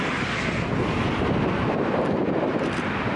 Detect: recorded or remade recorded